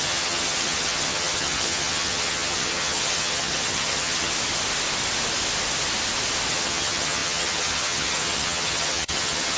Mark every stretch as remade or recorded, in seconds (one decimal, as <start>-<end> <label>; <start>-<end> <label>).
0.0-4.3 remade; 4.3-6.5 recorded; 6.5-9.6 remade